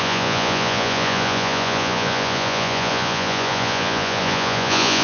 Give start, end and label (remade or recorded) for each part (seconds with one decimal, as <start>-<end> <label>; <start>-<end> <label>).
0.0-5.0 remade